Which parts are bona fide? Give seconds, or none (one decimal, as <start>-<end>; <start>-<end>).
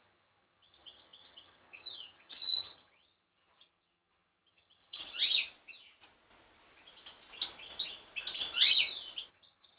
5.0-9.3